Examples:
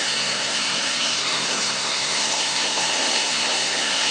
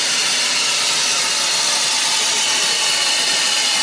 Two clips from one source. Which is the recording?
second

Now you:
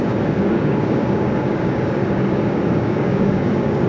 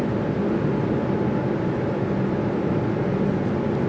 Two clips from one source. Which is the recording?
second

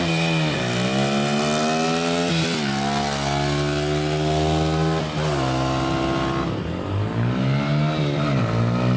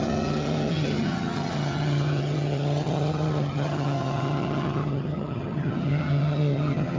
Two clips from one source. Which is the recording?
first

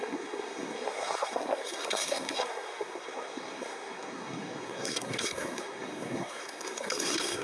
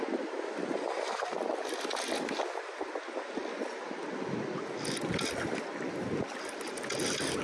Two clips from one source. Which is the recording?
second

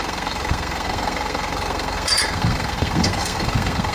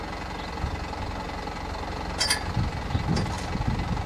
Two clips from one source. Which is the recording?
second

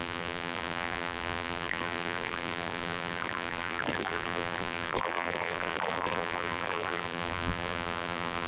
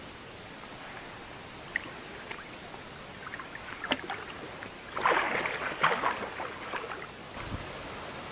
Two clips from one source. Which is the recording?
second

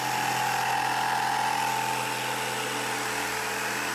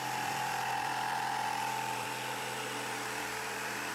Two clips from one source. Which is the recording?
first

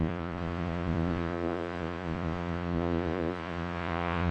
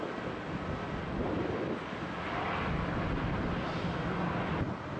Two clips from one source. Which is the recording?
second